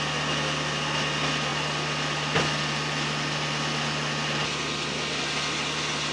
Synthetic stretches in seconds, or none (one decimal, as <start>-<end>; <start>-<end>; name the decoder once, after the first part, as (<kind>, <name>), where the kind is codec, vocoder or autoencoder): none